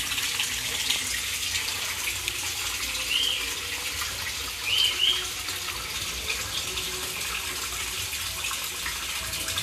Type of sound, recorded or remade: recorded